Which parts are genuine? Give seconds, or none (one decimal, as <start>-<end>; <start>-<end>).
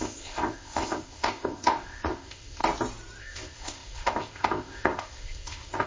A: 2.6-3.2